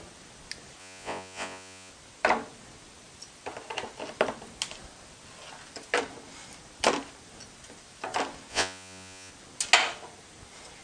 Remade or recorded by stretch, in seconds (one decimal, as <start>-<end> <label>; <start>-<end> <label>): 0.0-0.8 recorded; 0.8-1.9 remade; 1.9-8.5 recorded; 8.5-9.3 remade; 9.3-10.8 recorded